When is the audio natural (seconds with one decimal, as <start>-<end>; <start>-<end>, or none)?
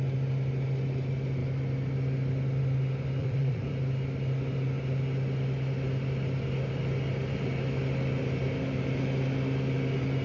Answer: 0.0-3.2; 3.7-10.2